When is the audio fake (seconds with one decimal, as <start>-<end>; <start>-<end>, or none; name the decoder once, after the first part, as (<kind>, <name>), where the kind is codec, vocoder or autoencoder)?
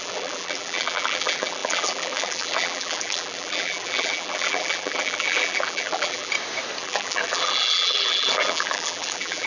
0.0-6.3 (vocoder, BigVGAN v2); 6.8-9.5